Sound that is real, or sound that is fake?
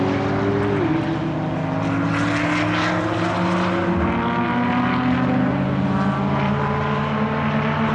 real